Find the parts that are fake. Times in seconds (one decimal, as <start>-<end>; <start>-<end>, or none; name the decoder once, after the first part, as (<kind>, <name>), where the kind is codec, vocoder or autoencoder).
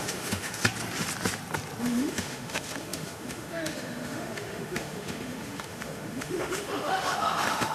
0.0-0.6 (autoencoder, DAC-VAE); 1.8-7.7